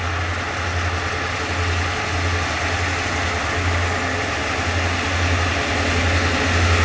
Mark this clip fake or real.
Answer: real